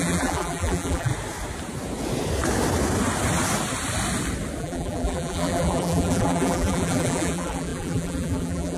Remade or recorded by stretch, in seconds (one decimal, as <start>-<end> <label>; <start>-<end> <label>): 0.0-1.1 remade; 1.1-4.6 recorded; 4.6-8.8 remade